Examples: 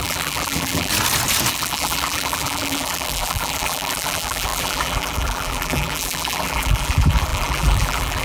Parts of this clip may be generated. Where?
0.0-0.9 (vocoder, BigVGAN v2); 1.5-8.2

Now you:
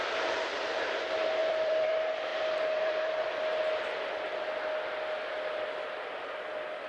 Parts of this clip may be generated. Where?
1.4-1.9 (vocoder, BigVGAN v2); 2.3-3.4

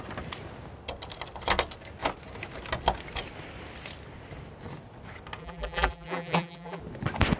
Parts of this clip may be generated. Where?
5.4-6.8 (vocoder, BigVGAN v2)

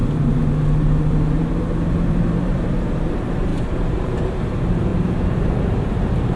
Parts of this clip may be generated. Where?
0.0-6.4 (vocoder, BigVGAN v2)

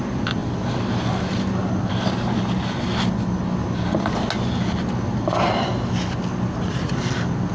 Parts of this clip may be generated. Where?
0.0-0.4 (vocoder, BigVGAN v2); 4.9-5.7; 6.7-7.5

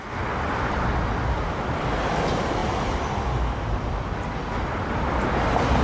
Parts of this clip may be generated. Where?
none

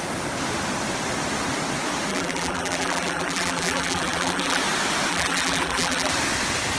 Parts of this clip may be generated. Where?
2.1-4.6 (vocoder, BigVGAN v2); 5.1-6.1

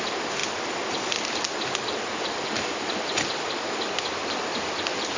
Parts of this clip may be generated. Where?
0.0-0.4 (vocoder, BigVGAN v2); 3.5-5.2